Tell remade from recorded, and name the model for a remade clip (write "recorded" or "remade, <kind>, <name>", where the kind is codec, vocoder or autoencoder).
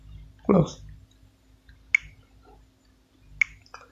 recorded